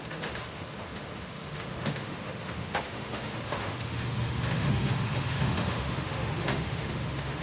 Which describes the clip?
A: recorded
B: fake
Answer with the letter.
B